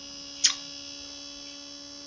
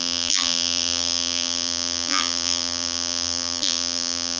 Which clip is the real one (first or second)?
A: first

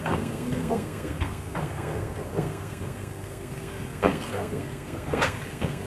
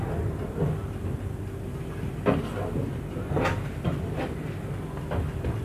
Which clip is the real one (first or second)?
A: second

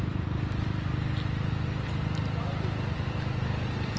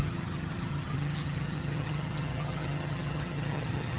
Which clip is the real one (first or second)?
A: first